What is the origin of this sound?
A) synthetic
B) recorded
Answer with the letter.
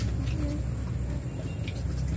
B